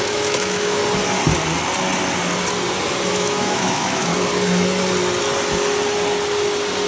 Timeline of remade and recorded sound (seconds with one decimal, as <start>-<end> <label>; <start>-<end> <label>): 0.0-0.8 remade; 0.8-3.1 recorded; 3.1-4.1 remade; 4.1-6.9 recorded